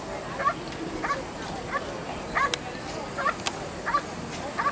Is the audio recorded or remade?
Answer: recorded